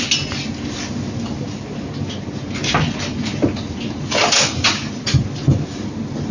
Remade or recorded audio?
recorded